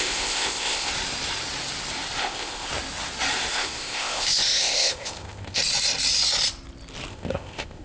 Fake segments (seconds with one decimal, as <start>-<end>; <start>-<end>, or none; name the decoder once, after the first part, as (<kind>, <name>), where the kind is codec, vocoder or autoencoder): 0.0-0.9 (codec, ZipCodec); 2.2-2.7; 3.5-5.6; 7.1-7.8